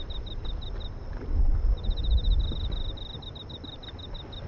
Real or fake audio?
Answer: real